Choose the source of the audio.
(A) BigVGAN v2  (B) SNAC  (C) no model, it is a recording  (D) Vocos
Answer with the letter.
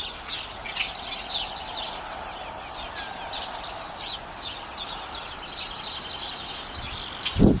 C